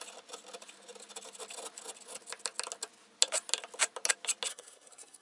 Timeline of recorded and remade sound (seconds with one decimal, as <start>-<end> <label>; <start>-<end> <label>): 0.0-4.5 recorded; 4.5-5.2 remade